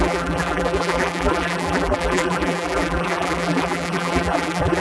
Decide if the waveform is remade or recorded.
remade